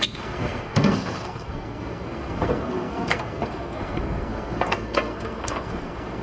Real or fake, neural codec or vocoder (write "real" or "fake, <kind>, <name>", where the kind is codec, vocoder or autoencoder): fake, codec, SNAC